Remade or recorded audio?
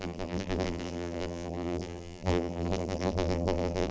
remade